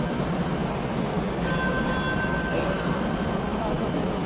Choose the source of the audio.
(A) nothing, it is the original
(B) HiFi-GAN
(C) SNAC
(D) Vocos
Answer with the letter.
A